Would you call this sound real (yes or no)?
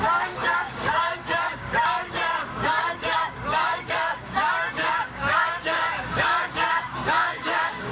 no